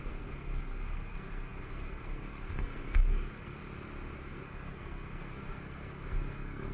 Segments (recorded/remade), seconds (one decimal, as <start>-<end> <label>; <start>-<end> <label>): 0.0-3.6 remade; 3.6-4.2 recorded; 4.2-6.7 remade